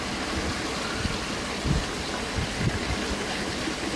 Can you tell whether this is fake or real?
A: real